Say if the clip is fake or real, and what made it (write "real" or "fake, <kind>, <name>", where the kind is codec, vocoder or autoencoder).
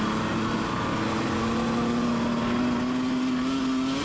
real